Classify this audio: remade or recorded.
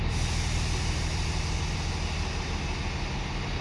recorded